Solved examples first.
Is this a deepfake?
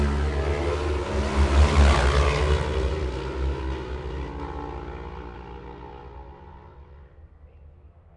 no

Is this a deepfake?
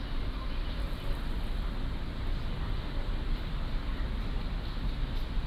no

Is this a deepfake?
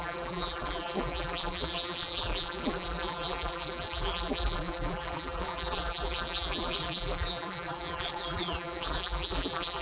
yes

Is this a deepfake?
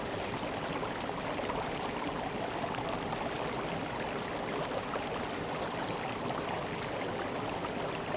no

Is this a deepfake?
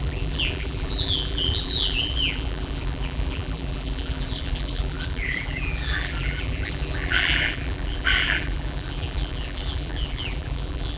yes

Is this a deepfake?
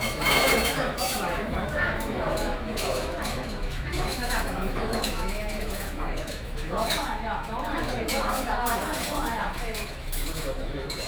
yes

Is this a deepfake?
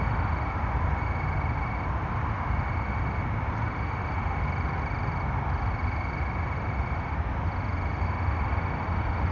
no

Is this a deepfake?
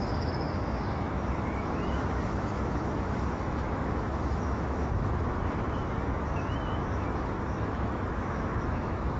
yes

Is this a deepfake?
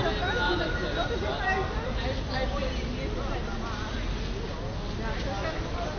no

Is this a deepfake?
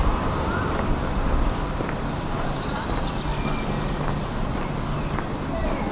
no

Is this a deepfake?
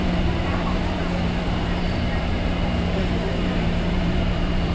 yes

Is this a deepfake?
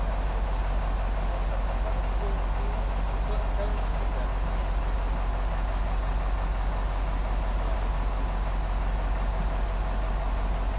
no